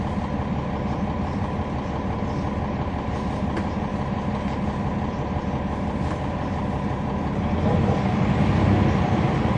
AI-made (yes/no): no